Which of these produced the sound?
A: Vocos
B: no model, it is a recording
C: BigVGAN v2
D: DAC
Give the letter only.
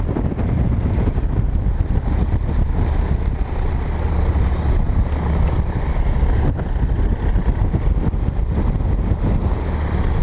B